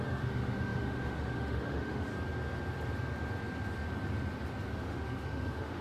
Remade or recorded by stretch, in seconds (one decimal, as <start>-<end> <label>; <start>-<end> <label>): 0.0-2.1 remade; 2.1-4.7 recorded; 4.7-5.8 remade